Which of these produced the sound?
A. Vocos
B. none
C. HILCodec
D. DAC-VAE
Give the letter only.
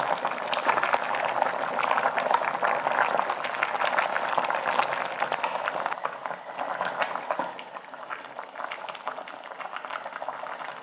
B